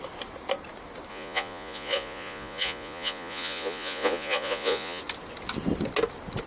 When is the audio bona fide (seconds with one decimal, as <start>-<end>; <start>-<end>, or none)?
0.0-1.1; 5.0-6.5